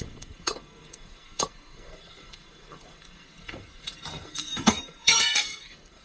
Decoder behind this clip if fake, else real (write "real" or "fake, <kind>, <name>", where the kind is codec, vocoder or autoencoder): fake, codec, SNAC